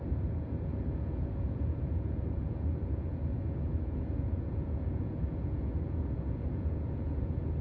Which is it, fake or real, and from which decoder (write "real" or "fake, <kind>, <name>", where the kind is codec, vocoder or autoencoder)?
fake, vocoder, Vocos